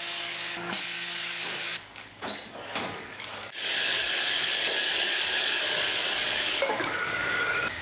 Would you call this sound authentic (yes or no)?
no